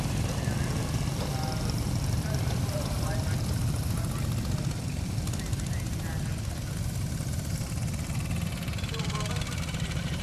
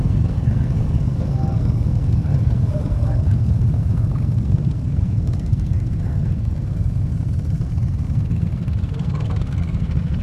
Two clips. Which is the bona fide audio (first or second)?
first